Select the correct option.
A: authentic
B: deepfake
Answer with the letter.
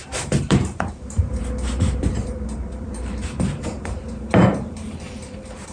B